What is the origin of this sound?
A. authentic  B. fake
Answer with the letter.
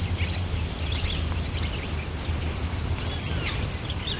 A